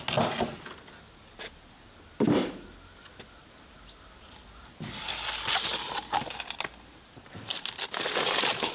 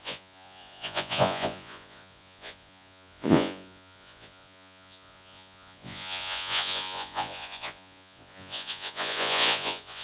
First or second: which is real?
first